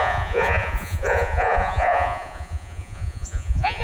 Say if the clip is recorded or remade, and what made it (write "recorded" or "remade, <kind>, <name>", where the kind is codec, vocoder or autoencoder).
remade, vocoder, Vocos